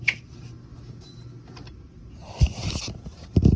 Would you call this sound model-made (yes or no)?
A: no